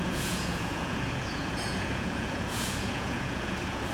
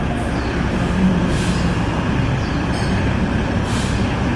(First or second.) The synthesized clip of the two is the first